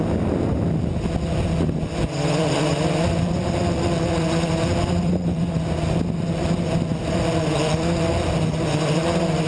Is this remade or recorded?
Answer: recorded